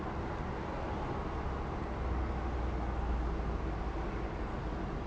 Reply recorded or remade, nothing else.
recorded